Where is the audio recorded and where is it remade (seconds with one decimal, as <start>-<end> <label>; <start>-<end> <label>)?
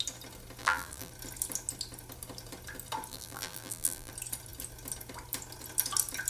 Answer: 0.0-0.6 recorded; 0.6-1.1 remade; 1.1-3.1 recorded; 3.1-4.1 remade; 4.1-6.3 recorded